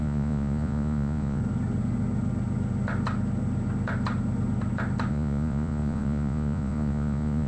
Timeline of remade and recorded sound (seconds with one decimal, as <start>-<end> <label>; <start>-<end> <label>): 0.0-1.4 remade; 1.4-5.1 recorded; 5.1-7.5 remade